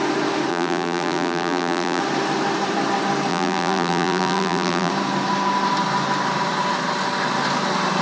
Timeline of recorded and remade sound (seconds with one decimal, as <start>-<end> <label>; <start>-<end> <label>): 0.0-0.5 recorded; 0.5-2.0 remade; 2.0-3.3 recorded; 3.3-4.9 remade; 4.9-8.0 recorded